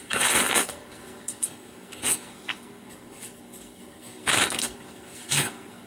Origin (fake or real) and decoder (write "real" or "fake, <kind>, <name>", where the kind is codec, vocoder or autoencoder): fake, codec, SNAC